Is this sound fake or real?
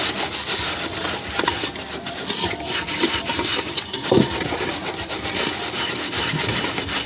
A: real